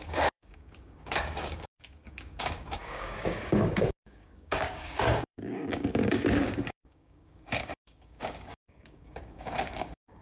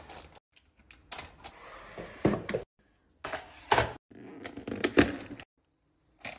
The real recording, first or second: second